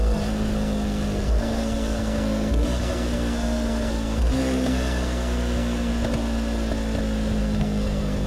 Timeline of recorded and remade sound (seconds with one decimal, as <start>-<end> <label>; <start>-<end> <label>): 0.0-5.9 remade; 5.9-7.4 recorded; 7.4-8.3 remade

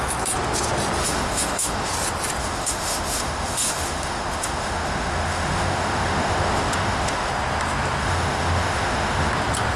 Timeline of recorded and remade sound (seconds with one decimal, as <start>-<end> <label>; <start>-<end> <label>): 0.0-1.0 recorded; 1.0-1.9 remade; 1.9-2.4 recorded; 2.4-7.3 remade; 7.3-8.0 recorded; 8.0-9.3 remade; 9.3-9.8 recorded

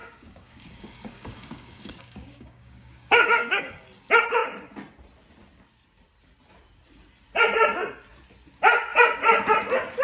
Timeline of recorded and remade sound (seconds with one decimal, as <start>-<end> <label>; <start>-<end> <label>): 0.0-3.6 remade; 3.6-10.0 recorded

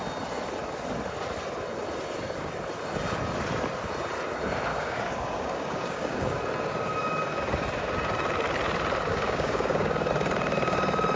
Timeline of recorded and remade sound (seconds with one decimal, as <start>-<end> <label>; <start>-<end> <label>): 0.0-4.7 recorded; 4.7-6.4 remade; 6.4-9.1 recorded; 9.1-10.1 remade; 10.1-11.2 recorded